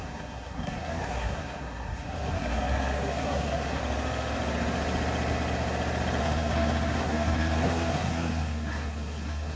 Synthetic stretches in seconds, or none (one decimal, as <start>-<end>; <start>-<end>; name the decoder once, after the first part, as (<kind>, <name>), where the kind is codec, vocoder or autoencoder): 0.0-3.8 (codec, SNAC); 6.2-9.6